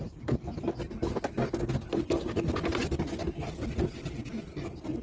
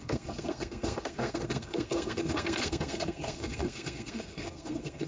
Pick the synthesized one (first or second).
second